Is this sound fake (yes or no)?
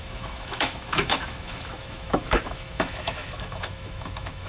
yes